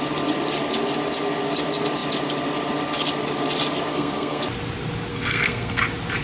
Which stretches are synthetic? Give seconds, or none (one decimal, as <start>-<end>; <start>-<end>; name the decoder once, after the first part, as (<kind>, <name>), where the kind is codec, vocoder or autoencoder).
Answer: 3.9-4.4 (codec, SNAC); 5.1-5.8